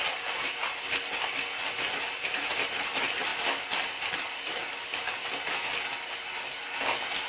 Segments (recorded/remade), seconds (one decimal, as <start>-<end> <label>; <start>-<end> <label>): 0.0-7.3 recorded